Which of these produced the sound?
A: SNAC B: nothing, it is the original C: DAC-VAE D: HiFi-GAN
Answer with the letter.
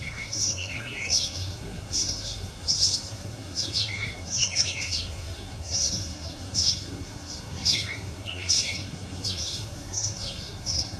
A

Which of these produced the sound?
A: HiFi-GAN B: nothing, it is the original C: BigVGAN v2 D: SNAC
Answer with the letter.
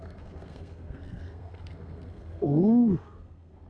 D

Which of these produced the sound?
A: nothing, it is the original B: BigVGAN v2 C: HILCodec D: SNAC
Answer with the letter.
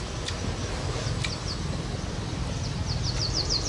A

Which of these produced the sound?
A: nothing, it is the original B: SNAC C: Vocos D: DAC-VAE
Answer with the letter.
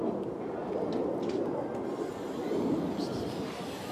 A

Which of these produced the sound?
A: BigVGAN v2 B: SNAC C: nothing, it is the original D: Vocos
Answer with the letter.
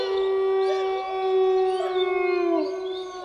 C